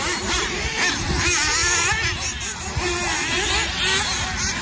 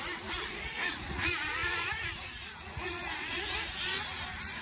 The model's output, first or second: second